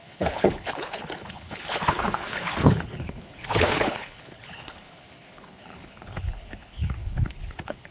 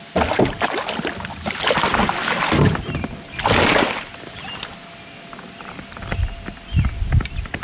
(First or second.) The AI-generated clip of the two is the first